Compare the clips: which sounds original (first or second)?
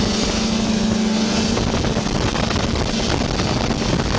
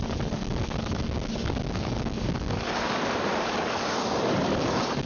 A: first